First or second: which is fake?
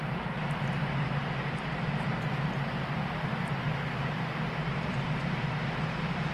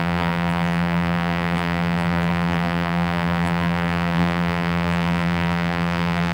second